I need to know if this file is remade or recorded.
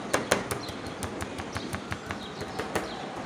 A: recorded